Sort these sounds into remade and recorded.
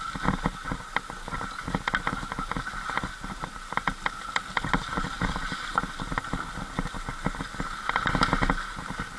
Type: recorded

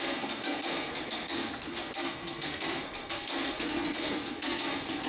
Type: remade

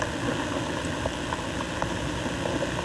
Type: recorded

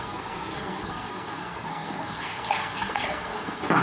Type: remade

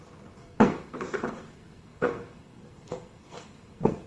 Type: remade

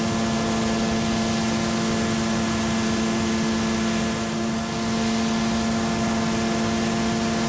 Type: recorded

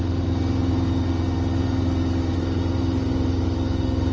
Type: recorded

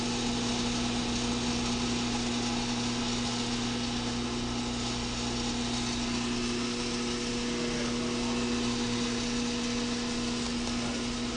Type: recorded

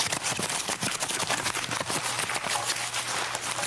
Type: recorded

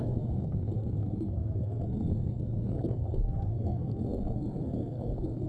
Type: remade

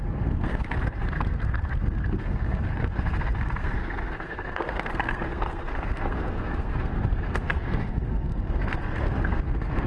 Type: remade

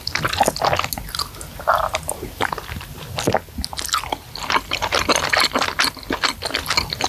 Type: recorded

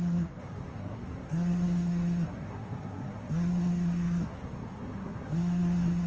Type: remade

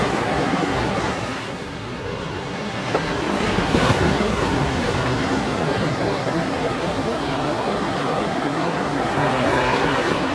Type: remade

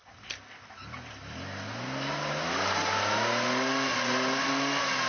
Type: recorded